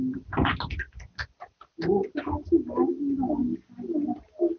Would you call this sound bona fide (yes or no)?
yes